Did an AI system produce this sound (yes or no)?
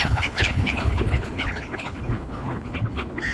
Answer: yes